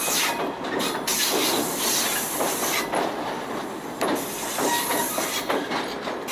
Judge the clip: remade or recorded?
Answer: recorded